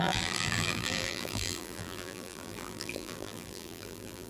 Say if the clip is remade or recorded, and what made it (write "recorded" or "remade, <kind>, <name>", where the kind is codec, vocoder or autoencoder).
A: remade, vocoder, BigVGAN v2